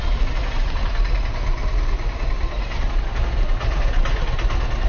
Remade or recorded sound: recorded